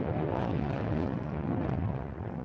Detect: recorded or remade remade